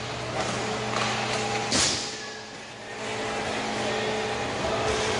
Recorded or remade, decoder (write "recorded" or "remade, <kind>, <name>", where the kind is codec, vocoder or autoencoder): recorded